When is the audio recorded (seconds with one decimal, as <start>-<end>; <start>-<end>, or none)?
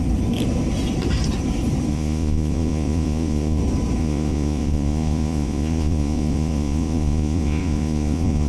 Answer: 0.0-1.9; 3.6-4.0